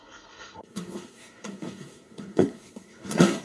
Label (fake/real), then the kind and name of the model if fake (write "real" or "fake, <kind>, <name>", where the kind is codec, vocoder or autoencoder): fake, codec, SNAC